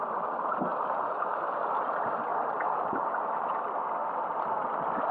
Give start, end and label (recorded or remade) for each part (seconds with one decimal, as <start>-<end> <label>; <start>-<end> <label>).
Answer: 0.0-0.7 recorded; 0.7-1.4 remade; 1.4-2.3 recorded; 2.3-3.6 remade; 3.6-5.1 recorded